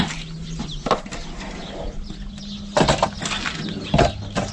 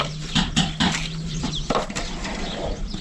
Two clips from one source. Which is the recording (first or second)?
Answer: first